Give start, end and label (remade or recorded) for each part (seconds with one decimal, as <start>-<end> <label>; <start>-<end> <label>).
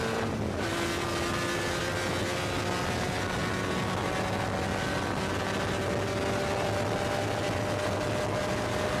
0.0-9.0 recorded